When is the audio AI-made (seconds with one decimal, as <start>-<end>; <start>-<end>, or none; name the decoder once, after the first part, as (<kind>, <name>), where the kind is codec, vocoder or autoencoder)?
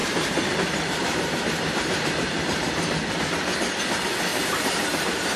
0.0-3.2 (vocoder, BigVGAN v2); 4.3-5.4